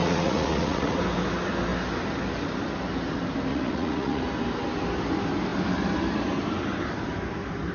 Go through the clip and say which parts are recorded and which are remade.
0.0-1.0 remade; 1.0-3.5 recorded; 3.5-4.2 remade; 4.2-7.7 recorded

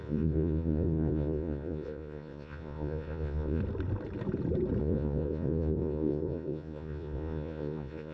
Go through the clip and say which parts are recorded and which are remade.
0.0-3.6 remade; 3.6-4.8 recorded; 4.8-8.1 remade

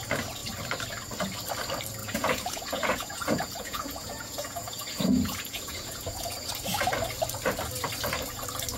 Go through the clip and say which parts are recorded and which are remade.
0.0-2.0 recorded; 2.0-6.5 remade; 6.5-8.8 recorded

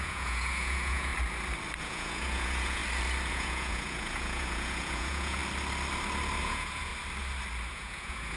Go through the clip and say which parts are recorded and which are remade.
0.0-1.1 remade; 1.1-1.8 recorded; 1.8-2.8 remade; 2.8-3.3 recorded; 3.3-5.4 remade; 5.4-6.4 recorded; 6.4-6.9 remade; 6.9-7.7 recorded; 7.7-8.4 remade

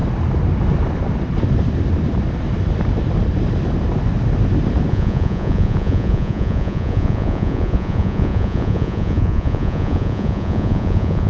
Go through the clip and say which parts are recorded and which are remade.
0.0-4.9 recorded; 4.9-11.3 remade